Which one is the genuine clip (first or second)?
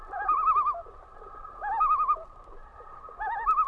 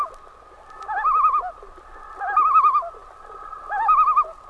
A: second